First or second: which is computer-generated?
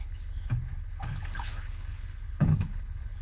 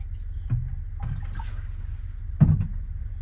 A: first